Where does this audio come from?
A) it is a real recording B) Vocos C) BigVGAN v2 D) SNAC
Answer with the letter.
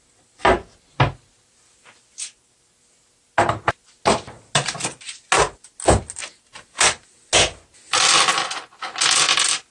A